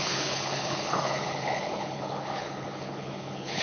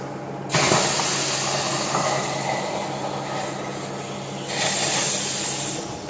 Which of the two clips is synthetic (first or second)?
first